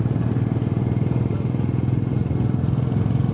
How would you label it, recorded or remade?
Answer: recorded